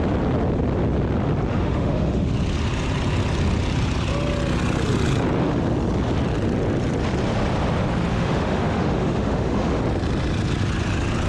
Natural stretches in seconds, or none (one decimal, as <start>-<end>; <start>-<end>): 0.0-1.5; 2.3-8.1; 9.8-11.3